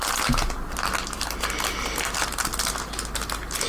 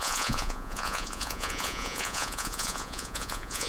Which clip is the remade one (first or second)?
second